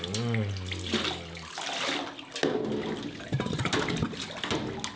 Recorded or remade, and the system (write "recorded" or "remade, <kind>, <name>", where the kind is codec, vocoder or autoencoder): recorded